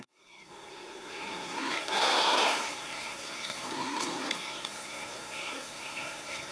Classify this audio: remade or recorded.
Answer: remade